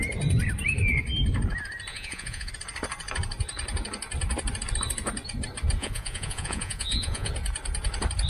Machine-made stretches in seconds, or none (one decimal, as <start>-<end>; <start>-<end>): 1.9-2.5; 5.8-7.3

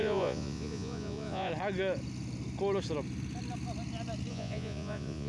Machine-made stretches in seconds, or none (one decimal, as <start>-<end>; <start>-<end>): 0.0-1.5; 4.3-5.3